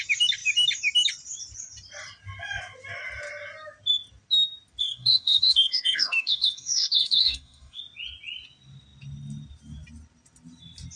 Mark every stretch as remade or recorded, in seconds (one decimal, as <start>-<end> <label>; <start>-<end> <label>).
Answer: 0.0-4.8 recorded; 4.8-7.8 remade; 7.8-11.0 recorded